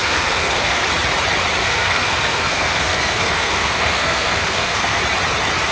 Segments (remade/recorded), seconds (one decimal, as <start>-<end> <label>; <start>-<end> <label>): 0.0-0.8 remade; 0.8-1.6 recorded; 1.6-5.0 remade; 5.0-5.7 recorded